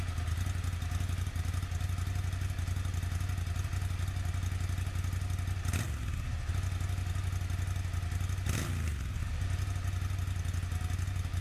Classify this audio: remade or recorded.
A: recorded